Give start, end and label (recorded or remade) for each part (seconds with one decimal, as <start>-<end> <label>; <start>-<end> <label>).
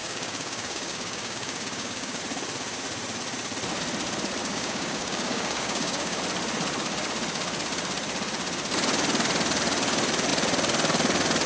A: 0.0-2.2 remade; 2.2-4.4 recorded; 4.4-6.2 remade; 6.2-11.5 recorded